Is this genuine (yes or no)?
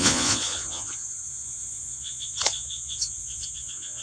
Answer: no